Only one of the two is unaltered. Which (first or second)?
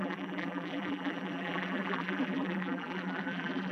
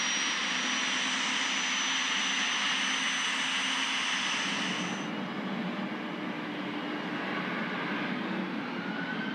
second